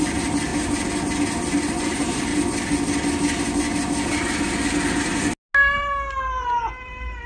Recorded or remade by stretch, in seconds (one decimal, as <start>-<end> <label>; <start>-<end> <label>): 0.0-0.5 remade; 0.5-1.8 recorded; 1.8-2.3 remade; 2.3-6.7 recorded; 6.7-7.3 remade